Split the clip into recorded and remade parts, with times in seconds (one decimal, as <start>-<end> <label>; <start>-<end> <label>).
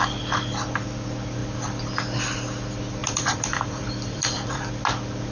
0.0-3.0 recorded; 3.0-4.7 remade; 4.7-5.3 recorded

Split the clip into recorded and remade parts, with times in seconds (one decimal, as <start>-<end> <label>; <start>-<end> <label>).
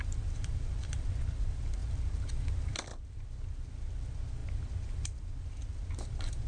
0.0-2.9 remade; 2.9-3.5 recorded; 3.5-4.4 remade; 4.4-5.0 recorded; 5.0-6.5 remade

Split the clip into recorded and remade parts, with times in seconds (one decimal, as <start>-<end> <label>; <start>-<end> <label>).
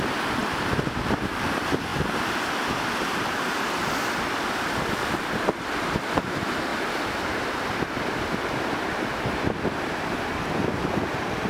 0.0-1.9 recorded; 1.9-4.1 remade; 4.1-6.7 recorded; 6.7-11.5 remade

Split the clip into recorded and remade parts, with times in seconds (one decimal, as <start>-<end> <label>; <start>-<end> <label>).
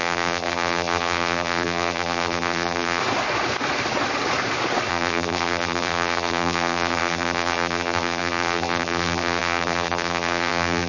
0.0-3.0 remade; 3.0-4.9 recorded; 4.9-10.9 remade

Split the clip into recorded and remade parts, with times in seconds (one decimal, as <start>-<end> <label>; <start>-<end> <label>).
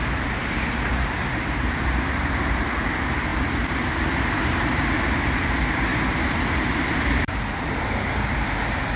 0.0-5.9 remade; 5.9-6.5 recorded; 6.5-9.0 remade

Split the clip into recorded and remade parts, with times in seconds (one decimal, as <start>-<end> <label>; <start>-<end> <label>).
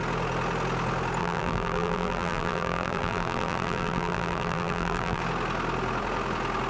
0.0-1.2 recorded; 1.2-5.2 remade; 5.2-6.7 recorded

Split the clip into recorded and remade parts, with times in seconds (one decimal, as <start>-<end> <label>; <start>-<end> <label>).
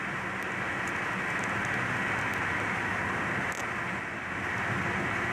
0.0-2.3 recorded; 2.3-3.0 remade; 3.0-5.3 recorded